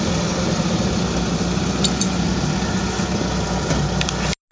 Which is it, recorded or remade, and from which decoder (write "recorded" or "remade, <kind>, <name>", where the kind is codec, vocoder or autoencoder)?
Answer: recorded